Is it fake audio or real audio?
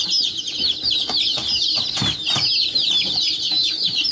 real